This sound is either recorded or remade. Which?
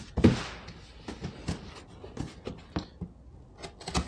recorded